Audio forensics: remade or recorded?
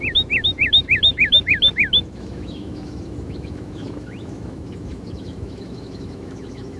remade